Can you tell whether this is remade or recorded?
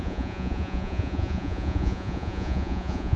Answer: remade